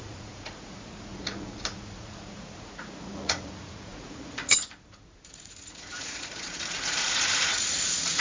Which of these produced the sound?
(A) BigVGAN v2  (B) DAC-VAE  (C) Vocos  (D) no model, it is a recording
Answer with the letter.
C